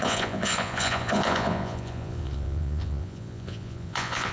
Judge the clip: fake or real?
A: fake